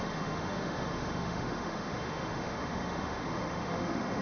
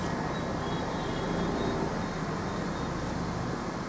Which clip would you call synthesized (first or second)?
first